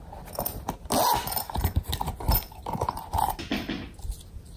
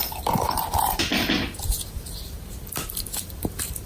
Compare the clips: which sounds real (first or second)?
first